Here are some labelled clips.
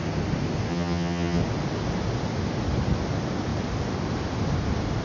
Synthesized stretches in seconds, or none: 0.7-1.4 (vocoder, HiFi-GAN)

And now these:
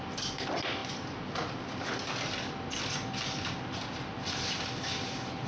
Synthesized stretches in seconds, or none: none